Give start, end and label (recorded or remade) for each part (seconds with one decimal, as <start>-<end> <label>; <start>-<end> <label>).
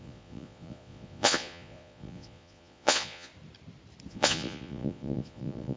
0.0-3.3 remade; 3.3-4.1 recorded; 4.1-5.8 remade